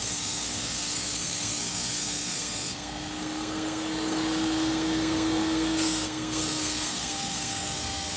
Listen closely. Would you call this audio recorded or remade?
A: remade